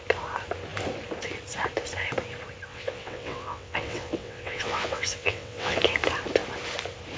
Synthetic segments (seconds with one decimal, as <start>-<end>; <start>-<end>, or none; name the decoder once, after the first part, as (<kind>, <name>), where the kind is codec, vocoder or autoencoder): 2.7-5.8 (vocoder, WaveNeXt)